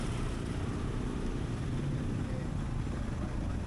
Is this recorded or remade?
recorded